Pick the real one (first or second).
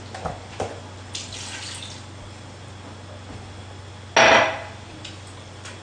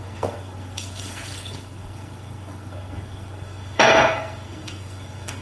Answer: first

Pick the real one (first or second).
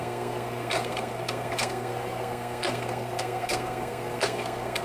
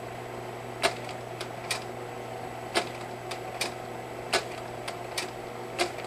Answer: second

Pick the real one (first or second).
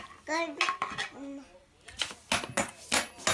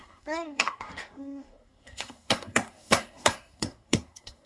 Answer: first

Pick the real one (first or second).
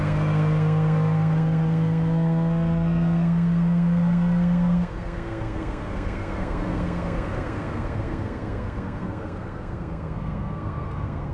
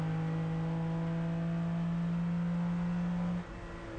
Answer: second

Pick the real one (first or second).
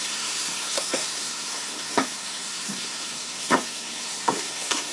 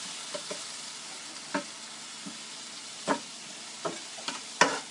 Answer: second